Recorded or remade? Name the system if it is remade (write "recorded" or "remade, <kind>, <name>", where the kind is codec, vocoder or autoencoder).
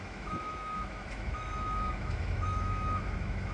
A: remade, autoencoder, DAC-VAE